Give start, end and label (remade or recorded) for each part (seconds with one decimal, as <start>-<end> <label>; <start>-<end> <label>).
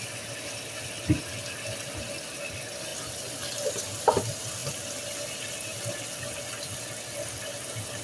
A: 0.0-8.0 recorded